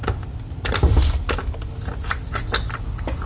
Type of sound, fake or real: real